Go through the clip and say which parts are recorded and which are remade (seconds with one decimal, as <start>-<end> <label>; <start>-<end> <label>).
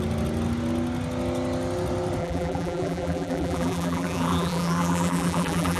0.0-2.2 recorded; 2.2-5.8 remade